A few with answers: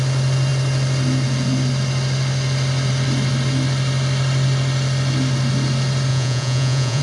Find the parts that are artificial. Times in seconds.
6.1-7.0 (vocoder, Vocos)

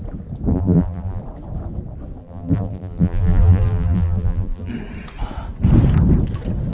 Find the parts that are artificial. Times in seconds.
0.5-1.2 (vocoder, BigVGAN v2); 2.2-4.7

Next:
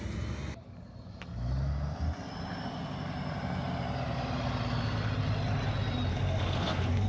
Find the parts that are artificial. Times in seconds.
6.1-7.1 (codec, SNAC)